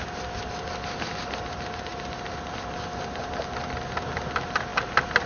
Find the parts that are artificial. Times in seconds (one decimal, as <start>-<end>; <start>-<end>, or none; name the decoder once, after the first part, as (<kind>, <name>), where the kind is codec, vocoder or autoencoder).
1.9-3.3 (vocoder, BigVGAN v2)